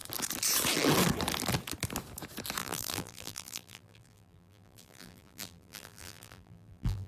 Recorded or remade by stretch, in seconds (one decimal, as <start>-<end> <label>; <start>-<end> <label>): 0.0-2.6 recorded; 2.6-7.1 remade